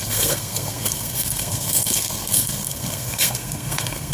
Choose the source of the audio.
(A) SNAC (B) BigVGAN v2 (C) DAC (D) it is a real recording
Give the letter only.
A